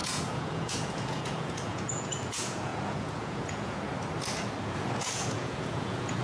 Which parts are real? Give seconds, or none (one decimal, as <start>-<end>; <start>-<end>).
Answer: 3.9-4.6

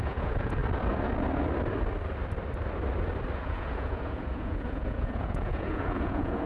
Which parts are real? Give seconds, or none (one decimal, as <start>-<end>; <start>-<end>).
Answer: 0.6-3.4

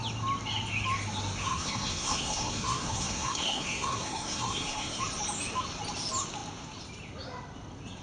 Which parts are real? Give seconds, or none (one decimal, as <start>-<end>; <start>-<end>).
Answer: 0.0-1.4; 5.0-8.0

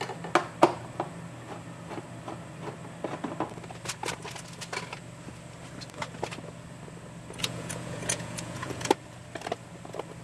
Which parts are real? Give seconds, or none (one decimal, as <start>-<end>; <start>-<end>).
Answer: 0.0-7.4; 8.9-10.2

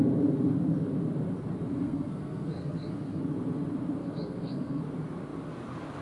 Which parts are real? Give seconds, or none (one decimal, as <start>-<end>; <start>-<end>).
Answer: 0.0-1.7; 3.2-4.0; 4.8-6.0

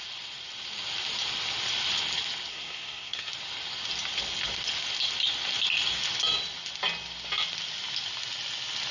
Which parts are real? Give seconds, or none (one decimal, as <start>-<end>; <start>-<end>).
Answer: 0.0-2.5; 3.3-8.9

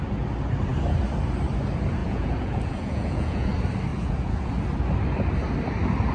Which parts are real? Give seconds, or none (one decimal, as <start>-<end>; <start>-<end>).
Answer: 0.0-2.0; 3.5-3.9; 4.5-6.1